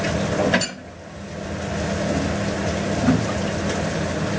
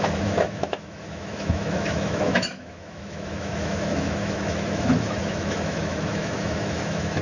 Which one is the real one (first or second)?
first